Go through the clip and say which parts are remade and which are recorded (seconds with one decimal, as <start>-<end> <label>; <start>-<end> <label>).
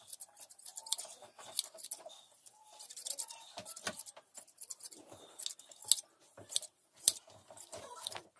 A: 0.0-8.4 recorded